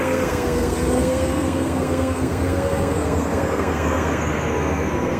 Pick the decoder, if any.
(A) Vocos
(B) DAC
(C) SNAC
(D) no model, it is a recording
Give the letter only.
C